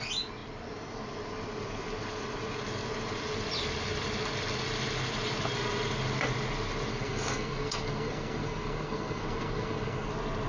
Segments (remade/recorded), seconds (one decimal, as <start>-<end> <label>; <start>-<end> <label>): 0.0-6.9 recorded; 6.9-10.1 remade; 10.1-10.5 recorded